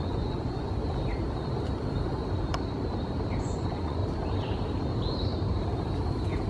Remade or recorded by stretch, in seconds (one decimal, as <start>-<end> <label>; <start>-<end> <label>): 0.0-0.8 remade; 0.8-3.4 recorded; 3.4-4.0 remade; 4.0-6.5 recorded